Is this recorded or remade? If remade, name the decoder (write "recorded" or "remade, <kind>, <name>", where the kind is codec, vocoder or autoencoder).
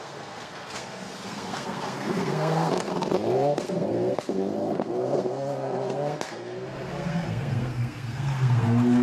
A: remade, codec, SNAC